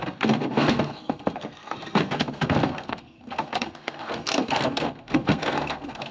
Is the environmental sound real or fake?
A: fake